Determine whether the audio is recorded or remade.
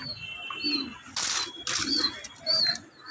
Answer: recorded